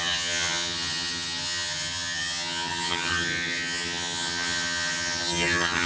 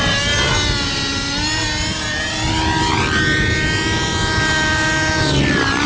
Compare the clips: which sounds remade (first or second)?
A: first